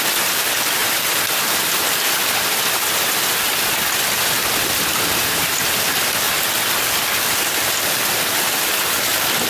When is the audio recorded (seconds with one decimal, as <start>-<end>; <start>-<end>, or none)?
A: 0.0-9.5